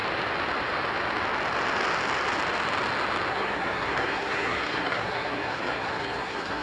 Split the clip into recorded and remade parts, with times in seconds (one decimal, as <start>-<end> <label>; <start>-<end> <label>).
0.0-3.3 recorded; 3.3-6.6 remade